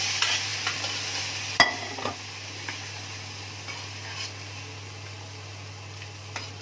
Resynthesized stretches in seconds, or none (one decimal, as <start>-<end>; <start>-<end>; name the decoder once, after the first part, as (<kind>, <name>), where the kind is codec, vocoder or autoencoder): none